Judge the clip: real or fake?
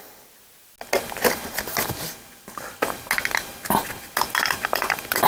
real